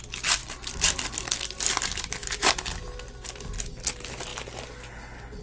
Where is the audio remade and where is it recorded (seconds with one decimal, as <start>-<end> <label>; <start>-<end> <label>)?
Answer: 0.0-5.4 recorded